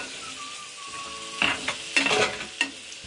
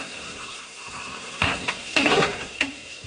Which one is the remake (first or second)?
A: second